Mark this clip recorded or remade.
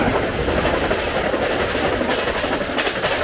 recorded